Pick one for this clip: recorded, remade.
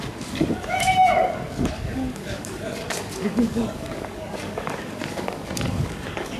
remade